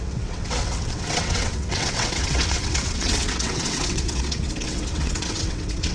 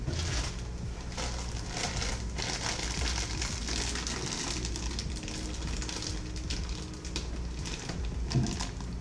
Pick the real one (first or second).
second